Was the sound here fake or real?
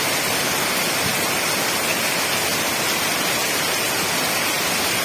real